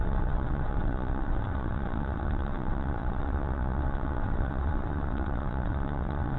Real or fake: fake